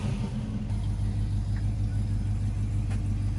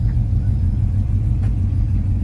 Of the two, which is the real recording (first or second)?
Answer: first